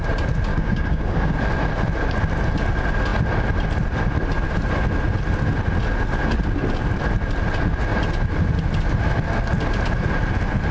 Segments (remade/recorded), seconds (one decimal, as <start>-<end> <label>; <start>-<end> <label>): 0.0-0.5 recorded; 0.5-1.3 remade; 1.3-10.7 recorded